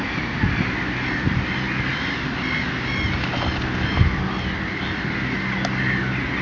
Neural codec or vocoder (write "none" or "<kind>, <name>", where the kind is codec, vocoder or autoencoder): none